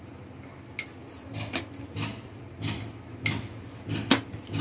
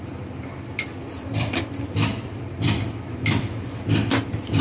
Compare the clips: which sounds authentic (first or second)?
first